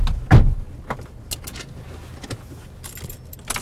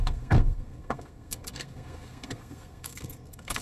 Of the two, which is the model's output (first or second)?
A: second